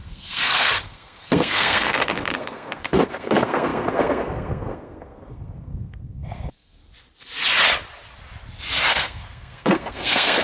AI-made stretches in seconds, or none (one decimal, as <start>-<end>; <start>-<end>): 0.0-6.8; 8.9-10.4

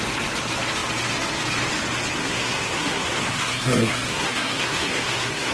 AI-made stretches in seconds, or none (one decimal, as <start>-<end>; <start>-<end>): 2.2-5.5

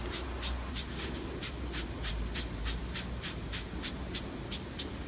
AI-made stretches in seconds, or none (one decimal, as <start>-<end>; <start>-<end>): none

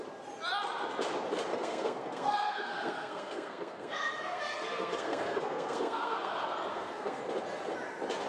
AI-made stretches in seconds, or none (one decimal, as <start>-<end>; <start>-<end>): 1.5-6.3; 6.7-7.2

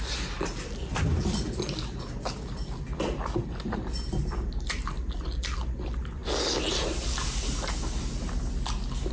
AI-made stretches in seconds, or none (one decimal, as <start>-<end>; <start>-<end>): none

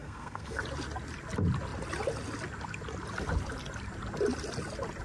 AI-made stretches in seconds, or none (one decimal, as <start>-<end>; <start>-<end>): 0.0-0.6

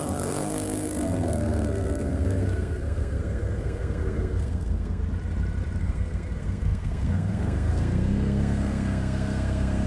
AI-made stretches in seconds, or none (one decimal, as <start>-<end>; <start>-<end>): 0.0-5.0; 5.8-9.9